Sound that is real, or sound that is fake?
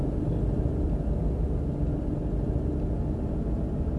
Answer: real